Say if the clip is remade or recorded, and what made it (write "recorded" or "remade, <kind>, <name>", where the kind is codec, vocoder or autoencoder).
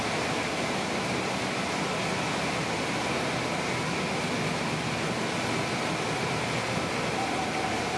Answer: recorded